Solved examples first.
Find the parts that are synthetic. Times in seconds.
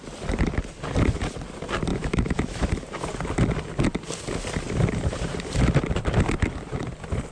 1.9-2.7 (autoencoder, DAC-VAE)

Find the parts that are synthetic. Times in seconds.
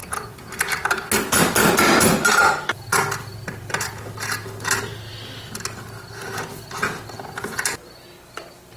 2.9-4.0 (vocoder, BigVGAN v2)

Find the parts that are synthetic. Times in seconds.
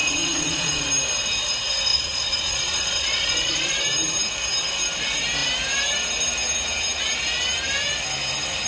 0.0-0.9 (vocoder, Vocos); 1.9-3.8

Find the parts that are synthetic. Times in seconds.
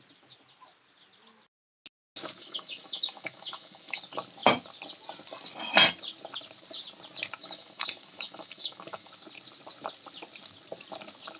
2.4-4.0 (autoencoder, DAC-VAE); 7.4-9.1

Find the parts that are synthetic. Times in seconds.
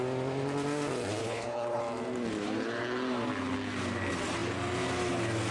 1.2-1.8 (codec, HILCodec)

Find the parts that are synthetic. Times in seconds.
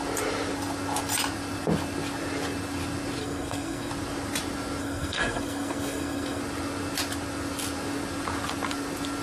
3.2-3.9 (codec, SNAC); 4.8-6.4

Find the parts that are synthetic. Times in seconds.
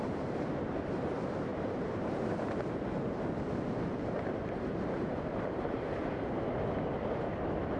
1.5-3.2 (vocoder, BigVGAN v2); 3.9-6.2